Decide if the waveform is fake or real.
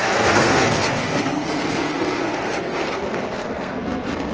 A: fake